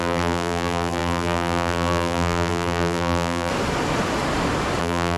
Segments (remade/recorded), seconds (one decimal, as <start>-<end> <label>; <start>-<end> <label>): 0.0-3.5 remade; 3.5-4.8 recorded; 4.8-5.2 remade